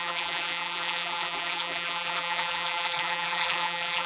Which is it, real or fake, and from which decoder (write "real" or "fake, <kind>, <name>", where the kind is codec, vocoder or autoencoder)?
fake, vocoder, BigVGAN v2